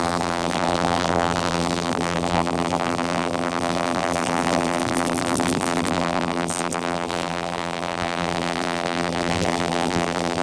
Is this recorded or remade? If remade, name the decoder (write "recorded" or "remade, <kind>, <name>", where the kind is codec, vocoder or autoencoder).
remade, vocoder, BigVGAN v2